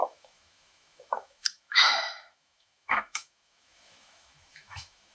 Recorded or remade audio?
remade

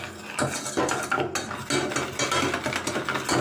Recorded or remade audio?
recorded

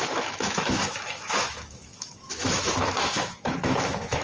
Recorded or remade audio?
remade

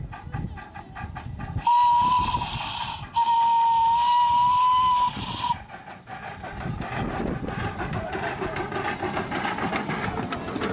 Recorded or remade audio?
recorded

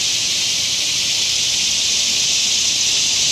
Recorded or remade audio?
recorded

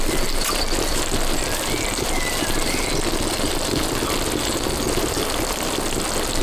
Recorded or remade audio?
recorded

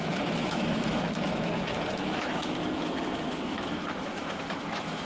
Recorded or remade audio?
remade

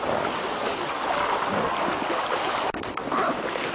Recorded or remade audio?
recorded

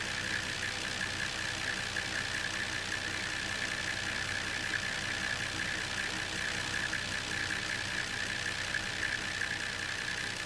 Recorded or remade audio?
recorded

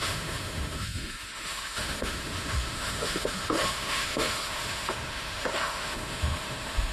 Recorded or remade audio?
remade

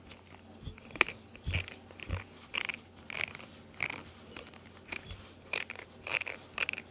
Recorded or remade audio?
recorded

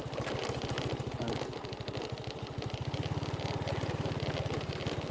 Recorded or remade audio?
recorded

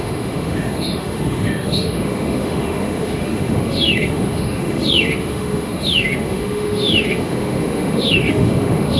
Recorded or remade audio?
remade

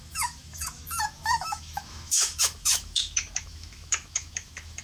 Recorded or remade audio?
remade